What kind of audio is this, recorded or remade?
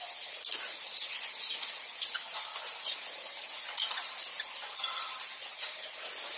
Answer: recorded